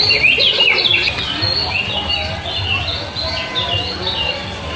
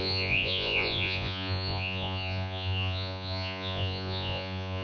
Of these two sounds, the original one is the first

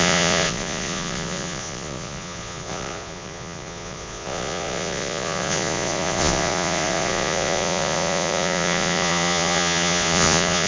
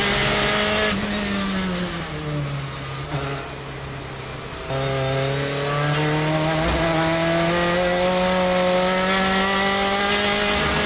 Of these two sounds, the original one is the second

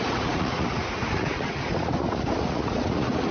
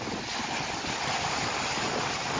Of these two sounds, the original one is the second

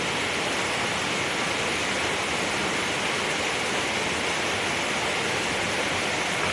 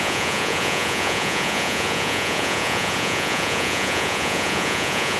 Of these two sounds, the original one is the first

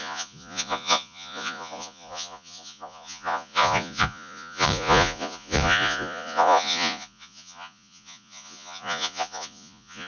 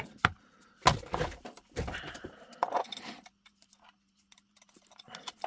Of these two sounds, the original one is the second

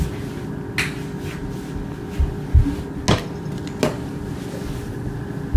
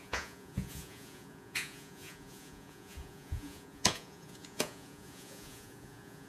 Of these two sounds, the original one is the first